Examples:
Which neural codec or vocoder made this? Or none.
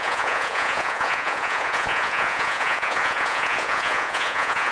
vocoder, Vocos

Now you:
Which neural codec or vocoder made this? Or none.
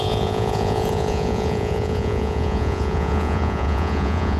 vocoder, Vocos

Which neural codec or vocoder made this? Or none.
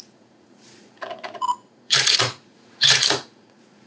vocoder, Vocos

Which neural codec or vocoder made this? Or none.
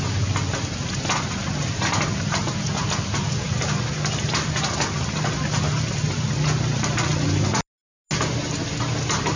none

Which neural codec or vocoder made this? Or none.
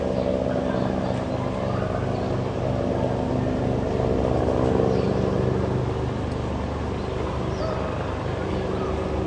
none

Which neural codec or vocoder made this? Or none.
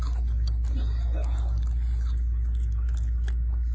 none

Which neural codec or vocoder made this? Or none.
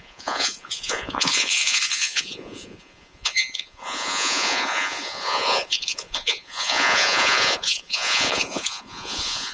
vocoder, Vocos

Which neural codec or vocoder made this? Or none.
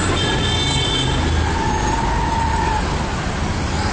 none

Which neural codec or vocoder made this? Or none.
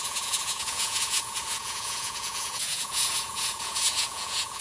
vocoder, Vocos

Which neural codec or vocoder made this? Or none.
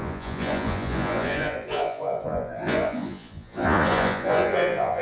vocoder, Vocos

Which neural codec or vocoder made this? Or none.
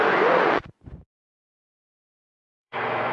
vocoder, Vocos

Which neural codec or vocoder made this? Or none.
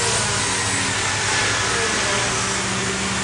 none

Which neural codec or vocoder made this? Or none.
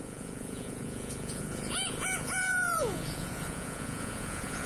vocoder, Vocos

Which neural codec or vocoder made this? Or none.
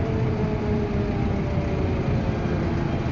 none